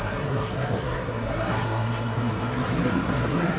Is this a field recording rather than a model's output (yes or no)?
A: no